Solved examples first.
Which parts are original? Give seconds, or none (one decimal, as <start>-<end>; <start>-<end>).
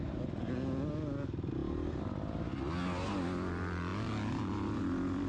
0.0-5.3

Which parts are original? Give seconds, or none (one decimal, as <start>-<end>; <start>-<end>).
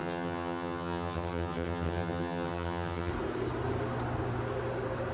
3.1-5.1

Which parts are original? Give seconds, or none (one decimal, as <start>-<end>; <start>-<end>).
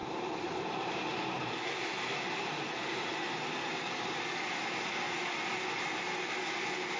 4.2-7.0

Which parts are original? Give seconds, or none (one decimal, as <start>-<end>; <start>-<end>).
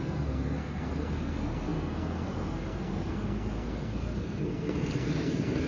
none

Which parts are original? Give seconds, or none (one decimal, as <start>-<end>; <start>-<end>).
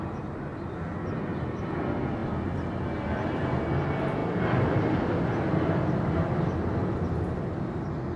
0.0-2.2; 3.6-4.2; 7.6-8.2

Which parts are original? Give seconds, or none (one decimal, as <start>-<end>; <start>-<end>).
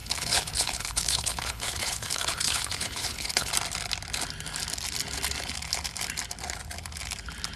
3.5-7.6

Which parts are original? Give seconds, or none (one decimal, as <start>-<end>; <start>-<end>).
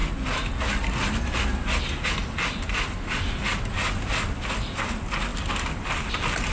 0.0-6.5